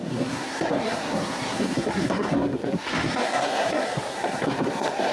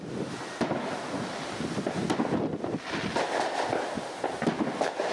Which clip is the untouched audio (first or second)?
second